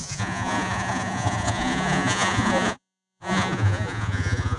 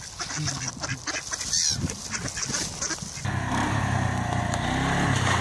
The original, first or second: second